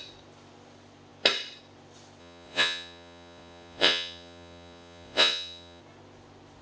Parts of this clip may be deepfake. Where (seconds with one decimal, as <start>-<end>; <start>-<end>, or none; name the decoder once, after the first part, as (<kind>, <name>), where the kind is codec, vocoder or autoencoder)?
2.2-5.8 (vocoder, Vocos)